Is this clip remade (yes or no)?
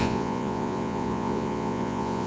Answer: yes